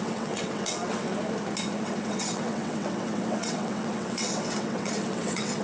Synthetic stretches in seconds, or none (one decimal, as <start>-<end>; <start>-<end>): 0.0-1.1; 1.8-5.6